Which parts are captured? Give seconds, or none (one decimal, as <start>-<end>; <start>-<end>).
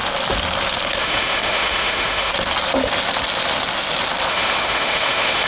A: 0.0-1.0; 2.3-4.3